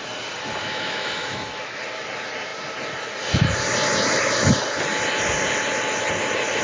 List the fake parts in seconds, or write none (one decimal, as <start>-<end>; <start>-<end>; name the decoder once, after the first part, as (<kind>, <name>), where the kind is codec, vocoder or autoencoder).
0.6-1.8 (autoencoder, DAC-VAE)